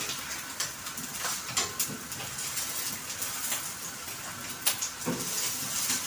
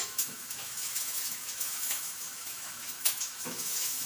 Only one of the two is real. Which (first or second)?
first